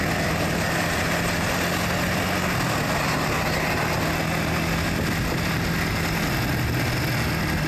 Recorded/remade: recorded